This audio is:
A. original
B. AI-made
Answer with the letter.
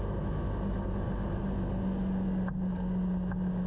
A